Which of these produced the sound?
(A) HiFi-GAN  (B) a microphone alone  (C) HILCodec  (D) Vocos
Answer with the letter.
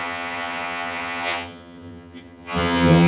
A